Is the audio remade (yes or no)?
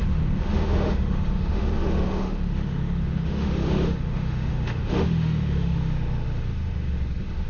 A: yes